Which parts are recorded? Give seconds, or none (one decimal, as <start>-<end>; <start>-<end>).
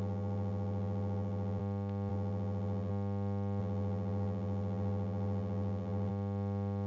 1.6-2.1; 2.9-3.6; 6.1-6.9